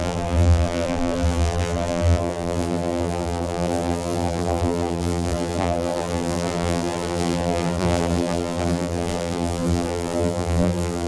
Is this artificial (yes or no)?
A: yes